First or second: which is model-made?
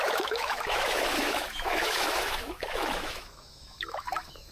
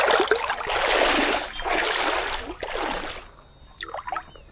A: first